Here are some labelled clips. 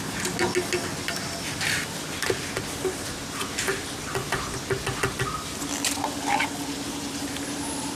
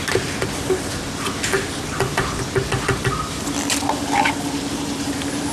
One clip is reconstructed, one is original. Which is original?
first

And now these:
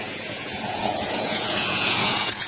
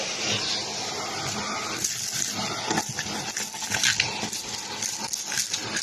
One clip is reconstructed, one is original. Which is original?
second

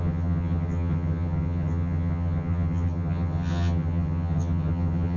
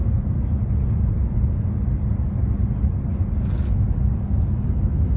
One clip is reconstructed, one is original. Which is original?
second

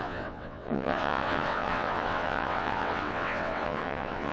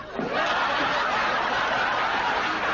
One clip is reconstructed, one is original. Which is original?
second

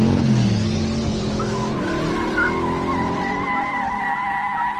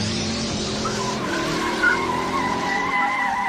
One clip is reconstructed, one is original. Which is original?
first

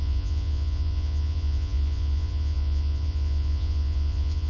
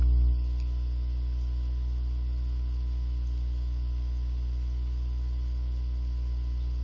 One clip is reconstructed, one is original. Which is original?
second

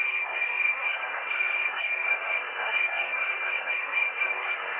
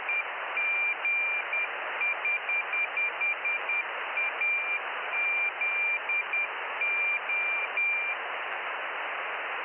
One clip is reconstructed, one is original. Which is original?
second